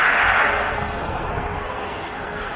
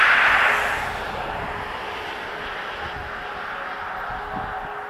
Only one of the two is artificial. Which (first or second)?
first